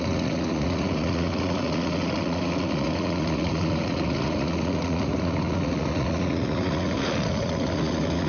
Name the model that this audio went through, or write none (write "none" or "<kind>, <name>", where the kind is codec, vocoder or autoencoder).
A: vocoder, Vocos